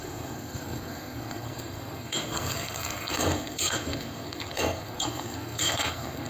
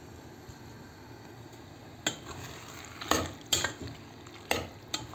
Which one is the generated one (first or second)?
first